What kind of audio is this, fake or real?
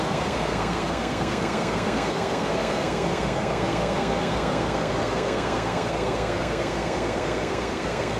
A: fake